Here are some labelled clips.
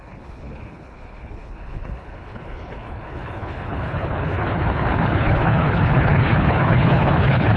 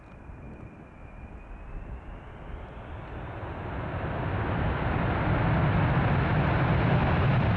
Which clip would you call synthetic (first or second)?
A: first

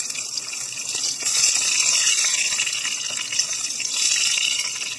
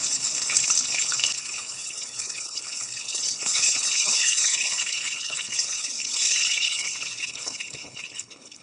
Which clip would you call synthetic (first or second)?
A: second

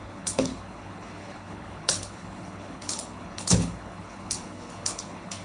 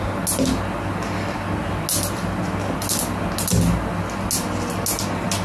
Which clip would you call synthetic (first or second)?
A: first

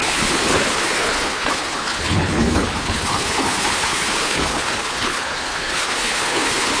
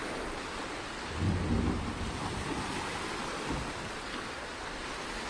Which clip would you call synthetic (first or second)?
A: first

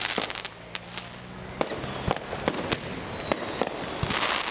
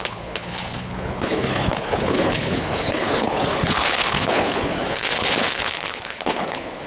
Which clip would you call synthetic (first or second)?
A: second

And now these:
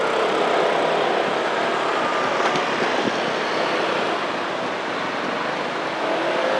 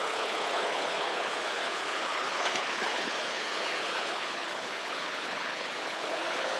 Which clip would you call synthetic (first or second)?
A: second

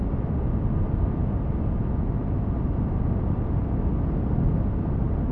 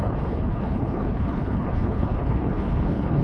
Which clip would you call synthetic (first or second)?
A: second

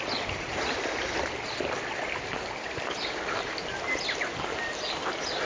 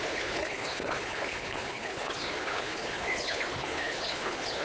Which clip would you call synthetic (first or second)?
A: second